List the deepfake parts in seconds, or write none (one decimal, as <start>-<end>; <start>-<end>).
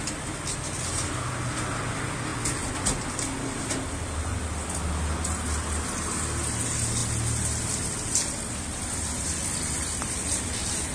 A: none